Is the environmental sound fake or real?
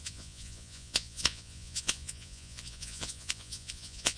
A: fake